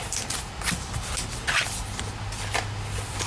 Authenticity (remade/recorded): recorded